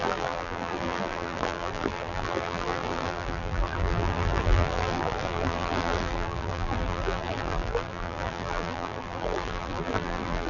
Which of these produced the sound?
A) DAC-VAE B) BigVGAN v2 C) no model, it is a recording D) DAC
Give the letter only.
B